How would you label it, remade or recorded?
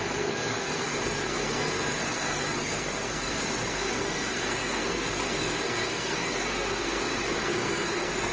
remade